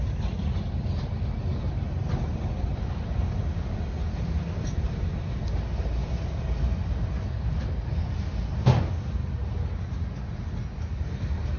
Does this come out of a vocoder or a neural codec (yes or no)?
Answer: no